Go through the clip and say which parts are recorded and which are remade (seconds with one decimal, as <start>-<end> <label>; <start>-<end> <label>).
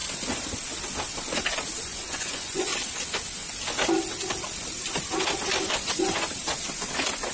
0.0-1.8 recorded; 1.8-2.7 remade; 2.7-7.3 recorded